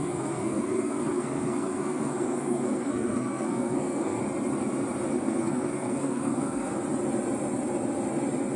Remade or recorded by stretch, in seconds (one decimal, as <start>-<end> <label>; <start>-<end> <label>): 0.0-4.2 remade; 4.2-5.1 recorded; 5.1-6.7 remade; 6.7-8.6 recorded